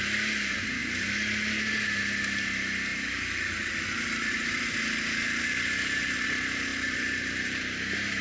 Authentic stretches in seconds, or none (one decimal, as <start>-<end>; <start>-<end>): 0.0-2.9; 4.8-6.7; 7.6-8.2